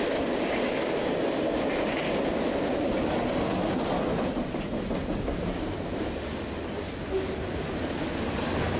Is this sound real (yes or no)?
yes